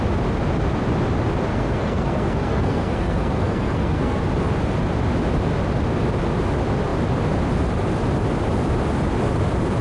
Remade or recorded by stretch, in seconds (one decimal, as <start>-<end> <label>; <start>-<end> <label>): 0.0-1.5 recorded; 1.5-4.2 remade; 4.2-9.8 recorded